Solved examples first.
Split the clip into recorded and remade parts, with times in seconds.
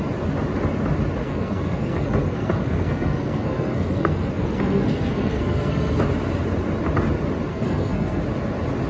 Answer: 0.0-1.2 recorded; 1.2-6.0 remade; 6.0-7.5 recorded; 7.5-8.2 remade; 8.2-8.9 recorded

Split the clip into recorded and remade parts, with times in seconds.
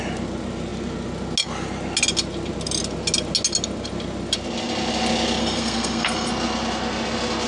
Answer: 0.0-5.4 recorded; 5.4-6.3 remade; 6.3-7.5 recorded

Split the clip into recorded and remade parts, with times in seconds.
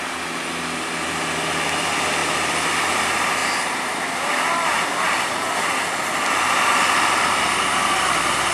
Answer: 0.0-2.2 recorded; 2.2-3.0 remade; 3.0-3.4 recorded; 3.4-7.4 remade; 7.4-8.5 recorded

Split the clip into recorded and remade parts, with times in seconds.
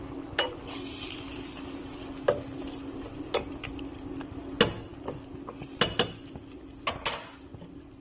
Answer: 0.0-8.0 recorded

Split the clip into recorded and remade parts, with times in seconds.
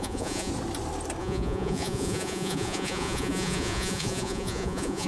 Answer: 0.0-0.5 remade; 0.5-1.2 recorded; 1.2-5.1 remade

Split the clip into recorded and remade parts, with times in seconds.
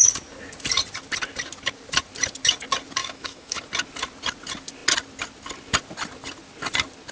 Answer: 0.0-3.0 recorded; 3.0-3.6 remade; 3.6-7.1 recorded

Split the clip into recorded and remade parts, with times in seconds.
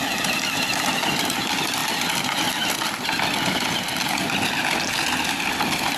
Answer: 0.0-6.0 recorded